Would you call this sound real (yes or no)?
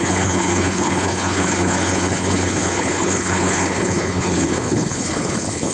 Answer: no